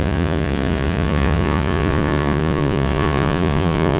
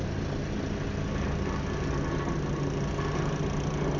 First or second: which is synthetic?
first